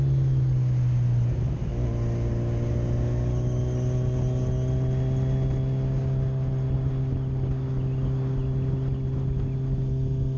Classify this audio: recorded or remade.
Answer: recorded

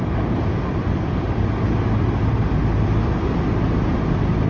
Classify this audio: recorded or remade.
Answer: recorded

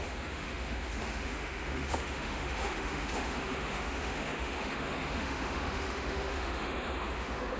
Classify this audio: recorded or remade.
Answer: remade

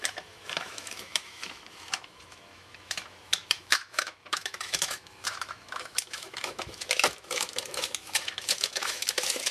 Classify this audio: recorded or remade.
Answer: remade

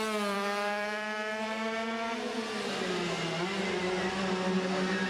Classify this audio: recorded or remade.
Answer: recorded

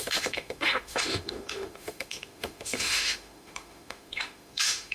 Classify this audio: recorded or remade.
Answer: remade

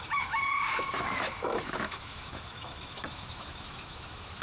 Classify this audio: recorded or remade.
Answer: remade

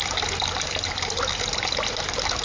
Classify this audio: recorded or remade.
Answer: recorded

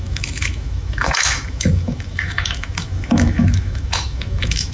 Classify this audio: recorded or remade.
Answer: remade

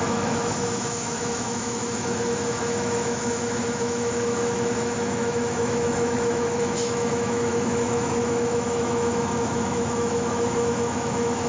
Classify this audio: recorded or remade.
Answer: remade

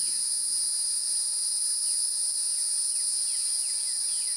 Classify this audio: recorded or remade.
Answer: recorded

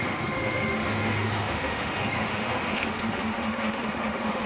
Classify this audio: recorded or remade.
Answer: remade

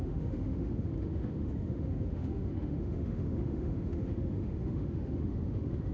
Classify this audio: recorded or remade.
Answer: remade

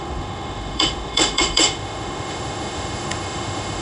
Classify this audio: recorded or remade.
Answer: remade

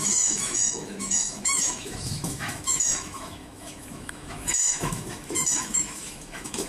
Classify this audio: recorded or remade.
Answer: remade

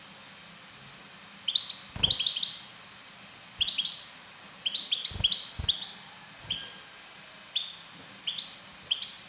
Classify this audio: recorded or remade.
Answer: recorded